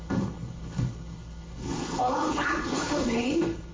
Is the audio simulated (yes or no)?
yes